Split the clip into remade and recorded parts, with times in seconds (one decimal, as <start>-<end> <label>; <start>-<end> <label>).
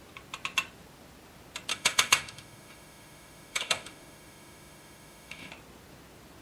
0.0-1.7 recorded; 1.7-5.5 remade; 5.5-6.4 recorded